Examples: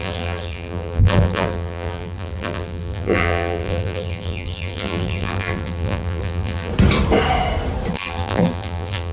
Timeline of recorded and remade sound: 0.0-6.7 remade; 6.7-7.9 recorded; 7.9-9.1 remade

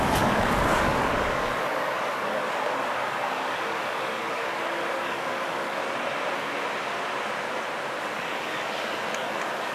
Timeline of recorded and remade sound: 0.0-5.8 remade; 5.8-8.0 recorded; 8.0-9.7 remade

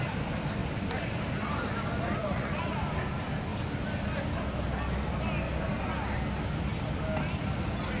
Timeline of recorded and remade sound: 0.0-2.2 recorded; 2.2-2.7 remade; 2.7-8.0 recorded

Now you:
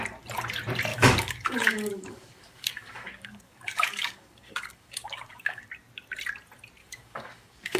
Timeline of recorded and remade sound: 0.0-0.9 recorded; 0.9-5.6 remade; 5.6-6.8 recorded; 6.8-7.8 remade